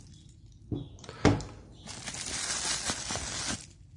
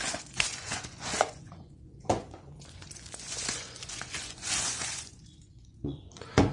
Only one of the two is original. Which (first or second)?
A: first